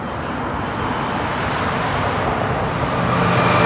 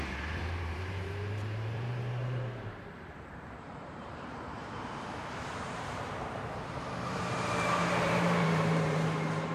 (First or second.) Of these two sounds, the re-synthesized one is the second